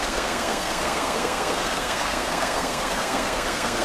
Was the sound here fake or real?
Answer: fake